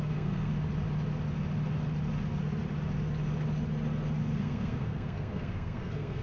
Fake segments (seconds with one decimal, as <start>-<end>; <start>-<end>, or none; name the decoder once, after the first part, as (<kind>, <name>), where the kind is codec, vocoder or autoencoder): 0.0-0.5 (codec, SNAC); 4.2-6.2

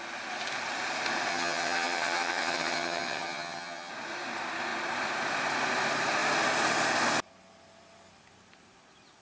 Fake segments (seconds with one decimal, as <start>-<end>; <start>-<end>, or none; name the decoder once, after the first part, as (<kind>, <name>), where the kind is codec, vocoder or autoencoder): 1.3-3.9 (vocoder, HiFi-GAN)

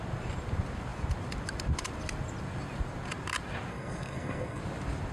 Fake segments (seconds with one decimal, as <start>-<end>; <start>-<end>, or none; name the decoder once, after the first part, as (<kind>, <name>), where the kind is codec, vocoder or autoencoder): 3.7-4.6 (codec, SNAC)

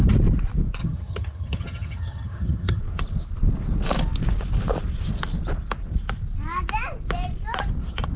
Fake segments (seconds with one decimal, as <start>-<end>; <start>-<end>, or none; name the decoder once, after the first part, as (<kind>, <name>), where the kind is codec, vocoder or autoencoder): 0.8-2.8 (vocoder, HiFi-GAN)